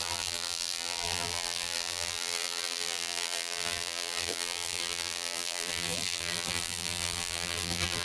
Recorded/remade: remade